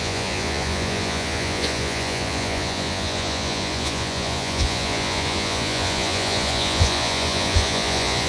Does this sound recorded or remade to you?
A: remade